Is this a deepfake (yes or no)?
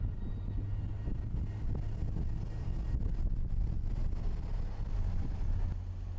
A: no